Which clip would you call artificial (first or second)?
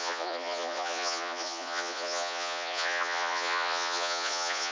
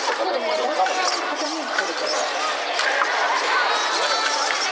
first